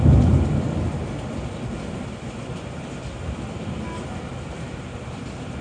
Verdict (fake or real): real